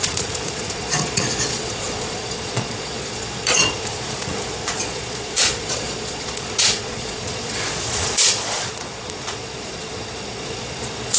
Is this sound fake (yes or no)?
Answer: yes